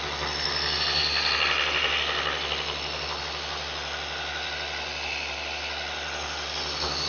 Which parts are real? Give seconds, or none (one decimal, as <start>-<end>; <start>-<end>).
0.0-7.1